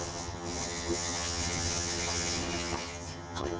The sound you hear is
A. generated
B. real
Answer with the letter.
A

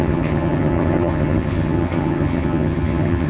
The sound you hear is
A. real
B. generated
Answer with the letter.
B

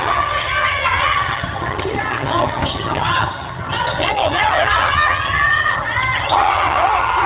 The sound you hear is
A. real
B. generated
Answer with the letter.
B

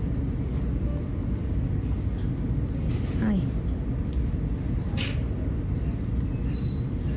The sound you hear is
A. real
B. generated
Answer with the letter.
A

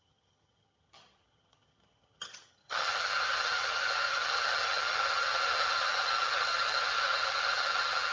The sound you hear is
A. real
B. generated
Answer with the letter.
B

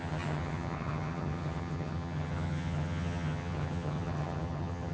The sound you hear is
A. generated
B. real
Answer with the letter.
A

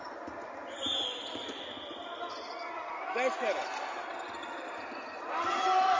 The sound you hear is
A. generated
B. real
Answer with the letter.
B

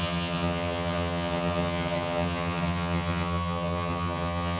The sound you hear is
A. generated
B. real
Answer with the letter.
A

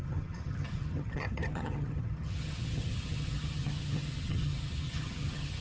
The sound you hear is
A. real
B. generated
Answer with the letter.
B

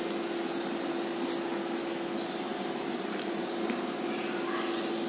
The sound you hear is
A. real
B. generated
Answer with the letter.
A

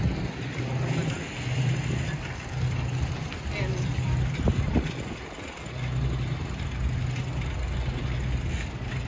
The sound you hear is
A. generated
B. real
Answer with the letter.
B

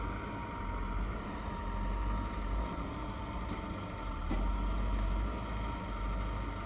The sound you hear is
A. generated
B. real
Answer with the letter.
B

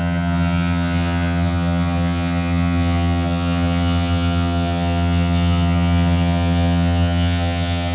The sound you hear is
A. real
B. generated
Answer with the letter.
B